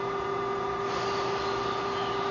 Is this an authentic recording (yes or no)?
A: yes